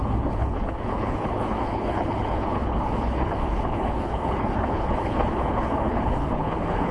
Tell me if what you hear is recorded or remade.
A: remade